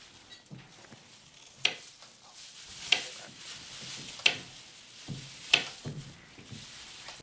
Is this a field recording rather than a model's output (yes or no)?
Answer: yes